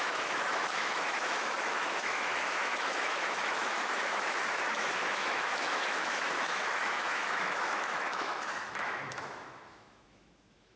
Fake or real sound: fake